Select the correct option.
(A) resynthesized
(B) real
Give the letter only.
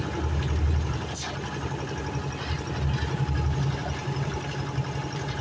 B